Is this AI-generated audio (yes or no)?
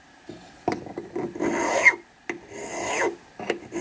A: no